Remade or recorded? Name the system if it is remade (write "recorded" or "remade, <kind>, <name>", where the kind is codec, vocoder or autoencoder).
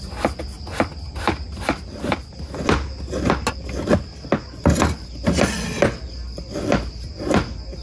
recorded